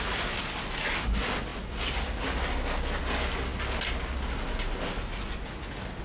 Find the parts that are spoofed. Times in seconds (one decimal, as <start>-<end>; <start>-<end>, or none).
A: none

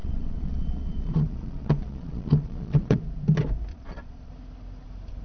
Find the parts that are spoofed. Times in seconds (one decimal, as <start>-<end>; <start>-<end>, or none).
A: 0.0-3.0; 3.7-4.3

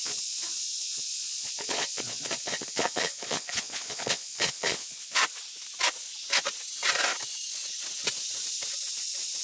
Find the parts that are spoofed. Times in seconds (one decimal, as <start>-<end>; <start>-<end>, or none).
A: 0.0-5.2

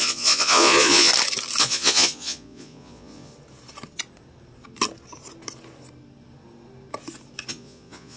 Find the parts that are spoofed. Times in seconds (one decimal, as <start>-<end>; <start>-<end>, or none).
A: 0.0-1.1; 1.6-3.3; 7.5-8.2

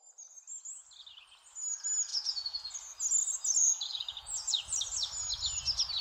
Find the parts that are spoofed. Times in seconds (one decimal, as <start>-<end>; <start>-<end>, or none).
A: 2.1-2.7; 3.6-4.6

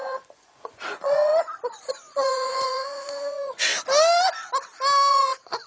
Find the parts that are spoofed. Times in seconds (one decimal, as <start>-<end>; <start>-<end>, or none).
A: 0.0-1.3; 1.9-3.7; 5.1-5.7

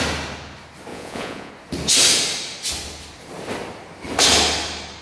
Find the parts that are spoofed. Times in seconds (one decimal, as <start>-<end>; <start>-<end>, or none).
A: 0.9-1.5

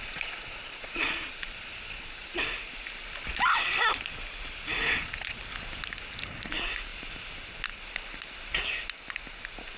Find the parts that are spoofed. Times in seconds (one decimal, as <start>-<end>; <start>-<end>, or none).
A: 0.0-2.4; 4.8-5.4